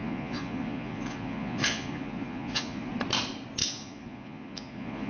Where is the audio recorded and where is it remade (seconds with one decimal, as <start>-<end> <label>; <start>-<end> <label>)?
0.0-2.9 remade; 2.9-3.6 recorded; 3.6-5.1 remade